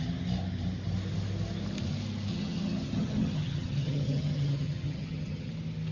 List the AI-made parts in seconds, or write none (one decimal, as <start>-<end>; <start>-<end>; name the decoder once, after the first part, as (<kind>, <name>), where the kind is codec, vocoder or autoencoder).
2.3-5.5 (vocoder, HiFi-GAN)